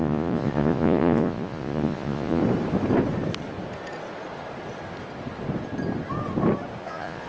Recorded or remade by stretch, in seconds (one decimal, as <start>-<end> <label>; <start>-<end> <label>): 0.0-2.4 remade; 2.4-6.8 recorded; 6.8-7.3 remade